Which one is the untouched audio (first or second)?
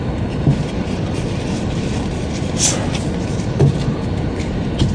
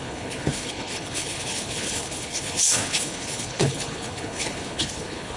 first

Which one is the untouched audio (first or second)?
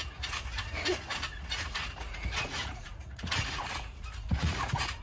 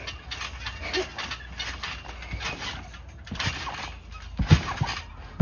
second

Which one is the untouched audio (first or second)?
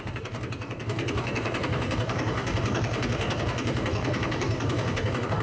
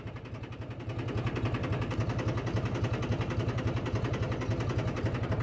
second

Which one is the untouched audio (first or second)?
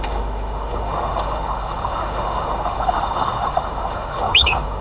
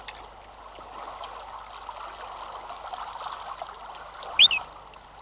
second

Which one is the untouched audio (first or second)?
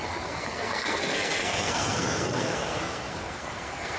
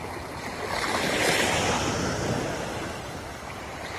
second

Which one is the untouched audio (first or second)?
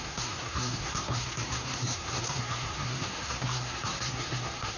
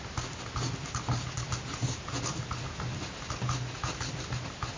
second